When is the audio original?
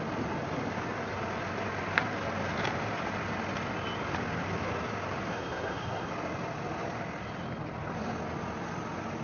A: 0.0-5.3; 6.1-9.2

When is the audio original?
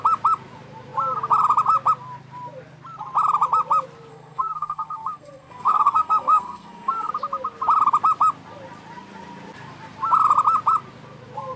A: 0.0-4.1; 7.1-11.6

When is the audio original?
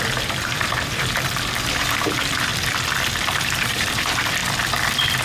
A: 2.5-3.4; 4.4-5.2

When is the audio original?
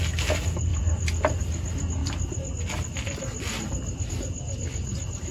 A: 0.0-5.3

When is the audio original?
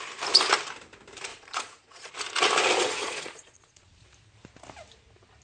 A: 0.0-1.3; 2.1-2.8; 4.0-5.4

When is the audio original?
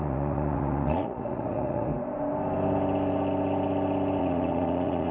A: 1.9-4.2